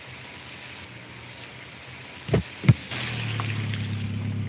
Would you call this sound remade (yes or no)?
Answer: no